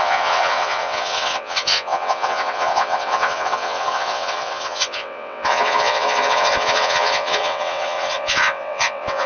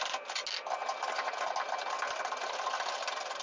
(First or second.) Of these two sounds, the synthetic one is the first